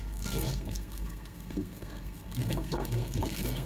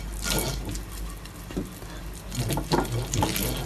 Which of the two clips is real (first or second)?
second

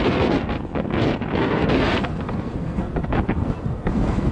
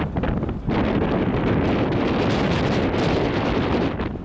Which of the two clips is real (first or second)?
second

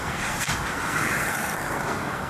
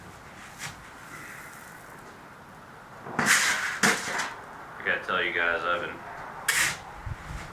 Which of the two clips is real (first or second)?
second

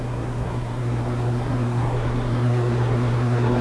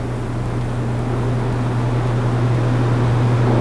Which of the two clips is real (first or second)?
second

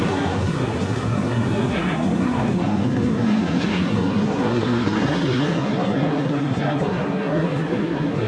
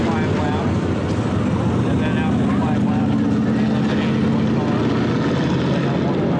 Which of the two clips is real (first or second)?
second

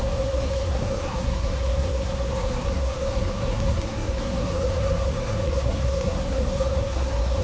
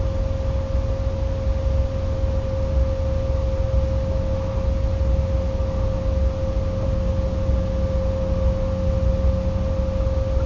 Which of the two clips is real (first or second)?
second